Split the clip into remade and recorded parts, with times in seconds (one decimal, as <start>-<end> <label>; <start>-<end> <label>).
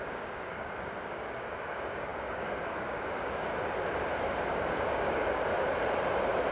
0.0-3.5 remade; 3.5-4.3 recorded; 4.3-5.5 remade; 5.5-6.5 recorded